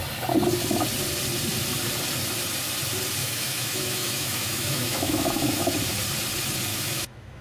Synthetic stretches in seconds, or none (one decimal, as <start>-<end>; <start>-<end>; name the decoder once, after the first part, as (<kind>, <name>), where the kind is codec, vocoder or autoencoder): 3.2-5.8 (autoencoder, DAC-VAE); 6.7-7.4